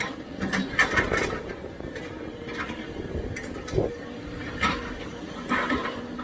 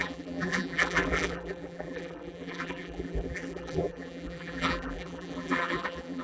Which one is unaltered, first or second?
first